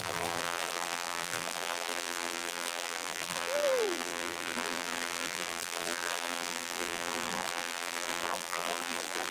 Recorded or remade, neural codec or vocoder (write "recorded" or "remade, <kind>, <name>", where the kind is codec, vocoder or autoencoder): remade, vocoder, BigVGAN v2